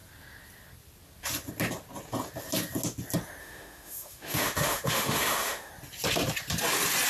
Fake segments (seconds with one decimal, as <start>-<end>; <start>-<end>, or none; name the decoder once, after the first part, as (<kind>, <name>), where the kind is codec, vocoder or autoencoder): 3.4-5.7 (autoencoder, DAC-VAE)